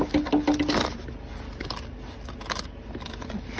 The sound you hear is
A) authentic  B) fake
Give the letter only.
A